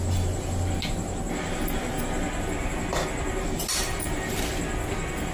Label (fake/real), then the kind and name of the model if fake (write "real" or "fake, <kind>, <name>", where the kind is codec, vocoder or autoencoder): real